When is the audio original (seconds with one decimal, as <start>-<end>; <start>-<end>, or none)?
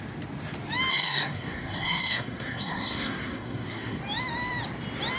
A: 0.0-0.9; 4.0-5.2